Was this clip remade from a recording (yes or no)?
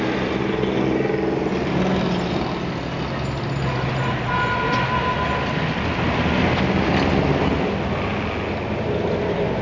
no